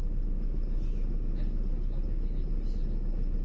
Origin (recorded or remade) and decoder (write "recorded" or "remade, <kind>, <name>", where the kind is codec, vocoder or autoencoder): recorded